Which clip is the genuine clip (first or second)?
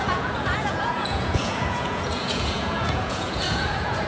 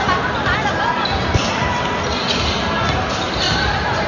second